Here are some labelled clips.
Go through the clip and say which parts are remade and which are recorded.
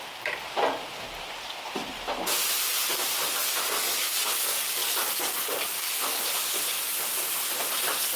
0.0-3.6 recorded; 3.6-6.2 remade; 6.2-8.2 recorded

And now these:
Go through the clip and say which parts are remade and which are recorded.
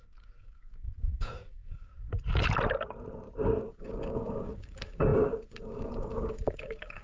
0.0-1.9 remade; 1.9-3.6 recorded; 3.6-7.0 remade